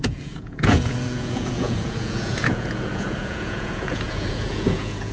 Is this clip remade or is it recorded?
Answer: remade